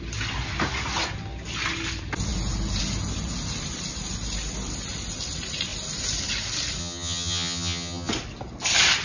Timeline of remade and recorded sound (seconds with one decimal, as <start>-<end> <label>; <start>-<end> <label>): 0.0-6.8 recorded; 6.8-8.1 remade; 8.1-9.0 recorded

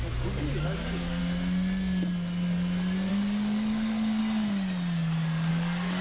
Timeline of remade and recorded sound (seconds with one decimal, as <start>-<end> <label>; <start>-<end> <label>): 0.0-1.2 remade; 1.2-3.1 recorded; 3.1-4.2 remade; 4.2-5.5 recorded; 5.5-6.0 remade

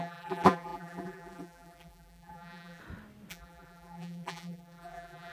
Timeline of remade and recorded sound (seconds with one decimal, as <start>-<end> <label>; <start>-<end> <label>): 0.0-2.8 remade; 2.8-3.3 recorded; 3.3-5.3 remade

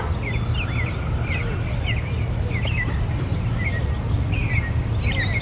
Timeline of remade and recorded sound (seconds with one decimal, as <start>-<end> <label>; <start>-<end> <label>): 0.0-5.4 recorded

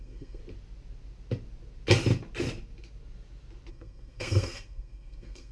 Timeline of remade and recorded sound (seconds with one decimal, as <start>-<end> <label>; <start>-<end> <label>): 0.0-0.4 remade; 0.4-3.7 recorded; 3.7-5.5 remade

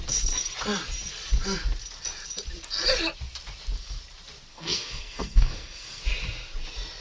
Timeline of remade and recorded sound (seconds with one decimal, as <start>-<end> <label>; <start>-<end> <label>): 0.0-4.5 recorded; 4.5-6.0 remade; 6.0-7.0 recorded

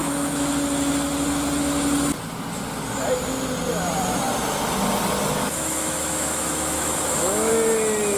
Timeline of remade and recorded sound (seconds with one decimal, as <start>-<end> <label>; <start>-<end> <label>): 0.0-0.5 remade; 0.5-5.4 recorded; 5.4-7.5 remade; 7.5-8.2 recorded